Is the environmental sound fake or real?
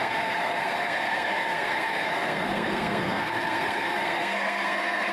fake